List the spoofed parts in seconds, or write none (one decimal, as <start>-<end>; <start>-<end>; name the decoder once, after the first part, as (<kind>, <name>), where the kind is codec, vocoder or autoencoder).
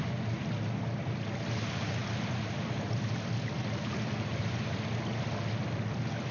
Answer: none